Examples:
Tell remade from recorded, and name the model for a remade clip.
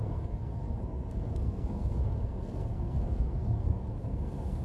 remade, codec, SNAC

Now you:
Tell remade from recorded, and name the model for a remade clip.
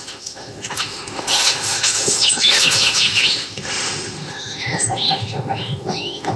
remade, autoencoder, DAC-VAE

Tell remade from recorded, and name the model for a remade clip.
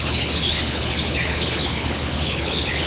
remade, codec, HILCodec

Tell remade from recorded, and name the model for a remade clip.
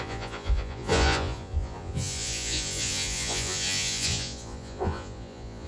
remade, vocoder, Vocos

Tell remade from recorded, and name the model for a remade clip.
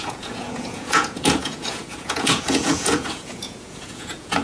remade, vocoder, Vocos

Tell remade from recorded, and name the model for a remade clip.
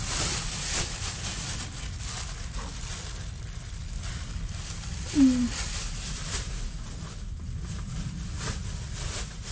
recorded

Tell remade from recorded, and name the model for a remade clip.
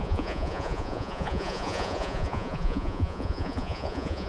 remade, vocoder, Vocos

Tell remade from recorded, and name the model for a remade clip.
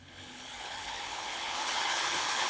remade, codec, HILCodec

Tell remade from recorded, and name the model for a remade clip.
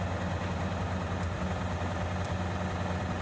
recorded